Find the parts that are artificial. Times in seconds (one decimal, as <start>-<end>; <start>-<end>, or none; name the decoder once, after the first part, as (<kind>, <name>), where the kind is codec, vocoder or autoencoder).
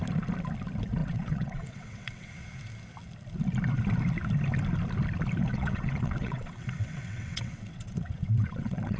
1.0-2.3 (vocoder, WaveNeXt); 5.5-9.0